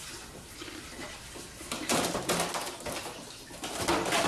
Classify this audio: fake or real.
real